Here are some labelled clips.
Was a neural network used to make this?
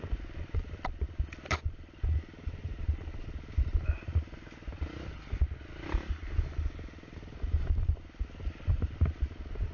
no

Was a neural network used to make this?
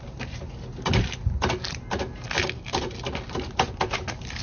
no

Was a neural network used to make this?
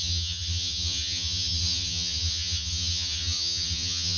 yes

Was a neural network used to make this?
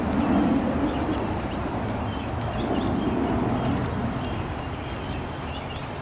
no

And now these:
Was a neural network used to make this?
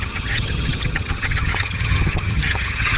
yes